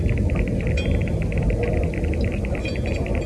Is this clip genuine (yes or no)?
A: yes